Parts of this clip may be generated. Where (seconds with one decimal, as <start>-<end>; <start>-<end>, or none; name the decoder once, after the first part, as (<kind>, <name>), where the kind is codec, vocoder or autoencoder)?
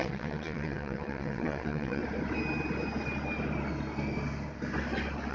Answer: 0.0-2.0 (vocoder, WaveNeXt)